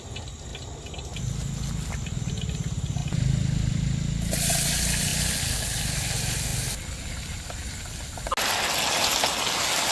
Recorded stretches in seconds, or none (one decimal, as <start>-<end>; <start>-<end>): 0.0-9.9